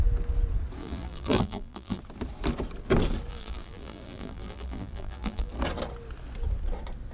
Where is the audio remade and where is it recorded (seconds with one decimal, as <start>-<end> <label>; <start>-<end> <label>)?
0.0-0.8 recorded; 0.8-2.0 remade; 2.0-3.3 recorded; 3.3-5.5 remade; 5.5-7.1 recorded